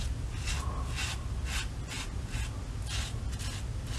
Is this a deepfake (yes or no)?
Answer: no